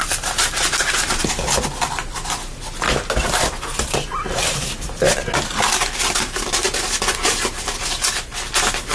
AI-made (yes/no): no